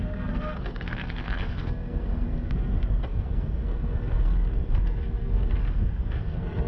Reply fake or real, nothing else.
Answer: fake